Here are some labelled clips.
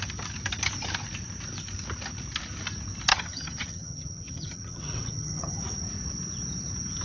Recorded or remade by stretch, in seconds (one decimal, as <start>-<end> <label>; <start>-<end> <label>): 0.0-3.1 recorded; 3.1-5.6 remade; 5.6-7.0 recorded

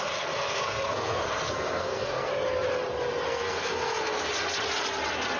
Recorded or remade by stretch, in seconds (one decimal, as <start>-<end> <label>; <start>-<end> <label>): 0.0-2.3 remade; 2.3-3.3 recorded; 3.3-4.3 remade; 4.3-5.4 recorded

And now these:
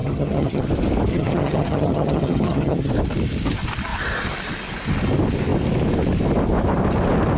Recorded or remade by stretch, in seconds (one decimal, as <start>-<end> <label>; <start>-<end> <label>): 0.0-0.7 remade; 0.7-1.1 recorded; 1.1-2.9 remade; 2.9-7.4 recorded

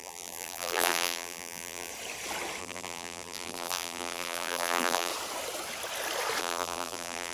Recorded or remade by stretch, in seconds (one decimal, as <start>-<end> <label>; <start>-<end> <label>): 0.0-1.9 remade; 1.9-2.6 recorded; 2.6-5.1 remade; 5.1-6.4 recorded; 6.4-7.3 remade

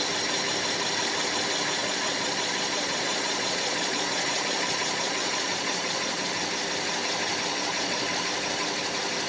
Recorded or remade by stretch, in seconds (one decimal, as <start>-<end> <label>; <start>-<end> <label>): 0.0-1.8 recorded; 1.8-6.3 remade; 6.3-7.5 recorded; 7.5-8.1 remade; 8.1-9.3 recorded

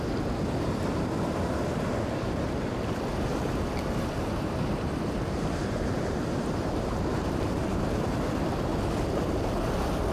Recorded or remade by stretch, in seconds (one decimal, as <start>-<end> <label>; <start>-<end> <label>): 0.0-3.3 recorded; 3.3-7.4 remade; 7.4-8.7 recorded; 8.7-9.7 remade; 9.7-10.1 recorded

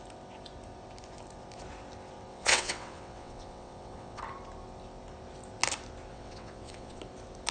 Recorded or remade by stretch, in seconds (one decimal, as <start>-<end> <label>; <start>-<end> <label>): 0.0-2.3 recorded; 2.3-4.2 remade; 4.2-6.1 recorded; 6.1-7.0 remade; 7.0-7.5 recorded

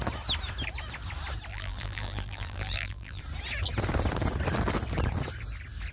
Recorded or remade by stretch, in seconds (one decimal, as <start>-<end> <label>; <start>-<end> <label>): 0.0-1.5 recorded; 1.5-3.2 remade; 3.2-5.9 recorded